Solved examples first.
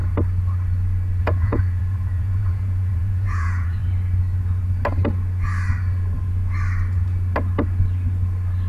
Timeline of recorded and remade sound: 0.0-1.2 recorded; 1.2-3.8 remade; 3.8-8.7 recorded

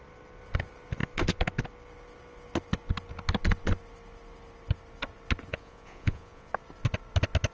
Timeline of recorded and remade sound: 0.0-5.5 recorded; 5.5-6.5 remade; 6.5-7.5 recorded

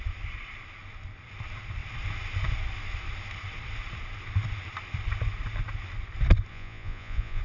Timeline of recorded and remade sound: 0.0-6.5 recorded; 6.5-7.4 remade

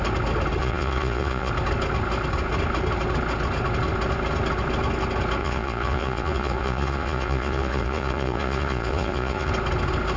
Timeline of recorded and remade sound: 0.0-0.6 recorded; 0.6-1.5 remade; 1.5-5.4 recorded; 5.4-9.5 remade; 9.5-10.2 recorded

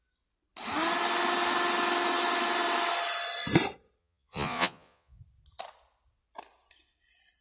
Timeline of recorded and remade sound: 0.0-4.0 recorded; 4.0-5.2 remade; 5.2-7.4 recorded

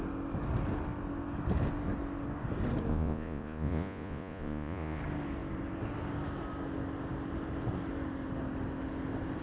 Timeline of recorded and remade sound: 0.0-2.9 recorded; 2.9-5.0 remade; 5.0-9.4 recorded